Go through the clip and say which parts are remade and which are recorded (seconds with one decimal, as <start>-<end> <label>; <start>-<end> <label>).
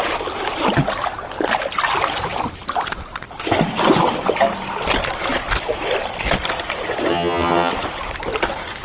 0.0-7.1 recorded; 7.1-7.7 remade; 7.7-8.8 recorded